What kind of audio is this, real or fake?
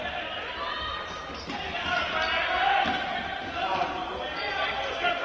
real